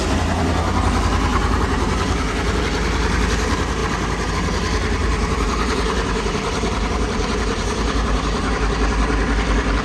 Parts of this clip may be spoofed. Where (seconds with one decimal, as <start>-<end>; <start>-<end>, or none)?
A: 1.3-2.6; 5.0-8.5